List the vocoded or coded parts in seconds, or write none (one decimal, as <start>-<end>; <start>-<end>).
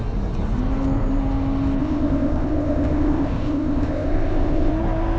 1.8-4.7